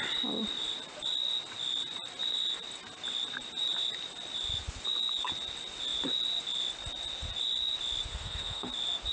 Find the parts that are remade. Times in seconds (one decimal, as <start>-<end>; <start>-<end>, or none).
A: 8.1-8.7